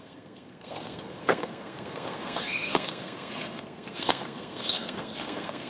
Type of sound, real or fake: fake